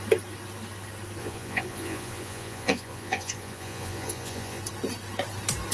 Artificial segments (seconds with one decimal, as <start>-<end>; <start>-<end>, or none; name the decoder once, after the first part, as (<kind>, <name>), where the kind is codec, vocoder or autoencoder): 1.2-4.6 (vocoder, Vocos)